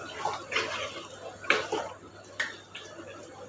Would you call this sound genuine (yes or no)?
yes